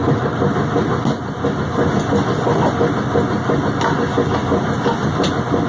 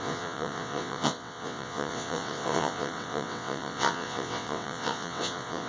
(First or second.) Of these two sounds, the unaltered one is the first